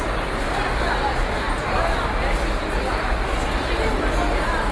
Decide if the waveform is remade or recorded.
recorded